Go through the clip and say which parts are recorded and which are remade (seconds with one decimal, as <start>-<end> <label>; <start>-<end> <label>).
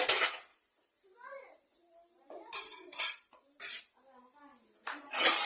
0.0-0.5 recorded; 0.5-3.8 remade; 3.8-5.5 recorded